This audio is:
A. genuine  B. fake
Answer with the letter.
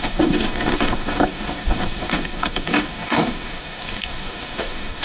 B